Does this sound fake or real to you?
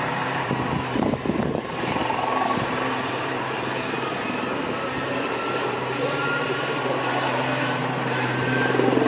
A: fake